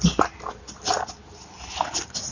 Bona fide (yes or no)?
yes